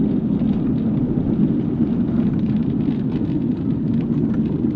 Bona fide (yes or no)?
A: yes